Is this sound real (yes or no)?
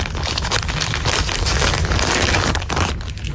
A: yes